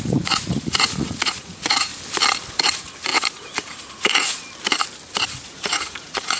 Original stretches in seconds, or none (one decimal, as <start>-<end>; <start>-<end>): 1.9-2.6; 4.4-5.2

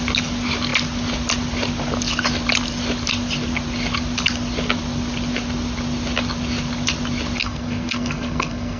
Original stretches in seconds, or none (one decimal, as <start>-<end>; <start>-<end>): 0.0-7.4

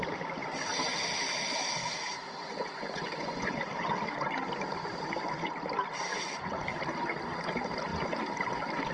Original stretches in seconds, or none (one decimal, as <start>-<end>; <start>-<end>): 0.0-2.4; 3.6-6.1; 6.6-8.9

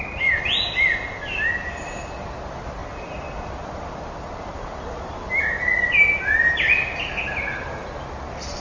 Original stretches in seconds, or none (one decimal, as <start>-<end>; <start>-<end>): 0.0-2.8; 5.5-8.6